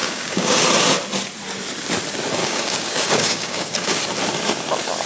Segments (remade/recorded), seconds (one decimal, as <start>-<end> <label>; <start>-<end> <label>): 0.0-0.6 remade; 0.6-2.4 recorded; 2.4-4.0 remade; 4.0-5.1 recorded